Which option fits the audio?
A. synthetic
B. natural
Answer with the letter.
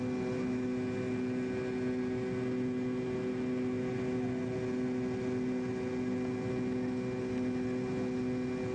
B